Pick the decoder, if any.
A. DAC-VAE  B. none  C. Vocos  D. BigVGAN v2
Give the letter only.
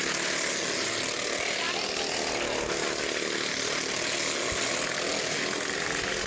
B